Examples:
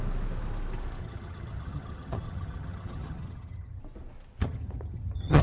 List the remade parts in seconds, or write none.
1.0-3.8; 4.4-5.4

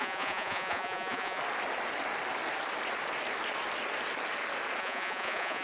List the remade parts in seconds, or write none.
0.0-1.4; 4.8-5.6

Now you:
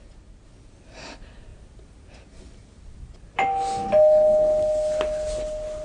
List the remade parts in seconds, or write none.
none